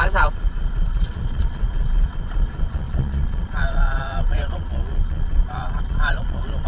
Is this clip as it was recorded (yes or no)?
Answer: no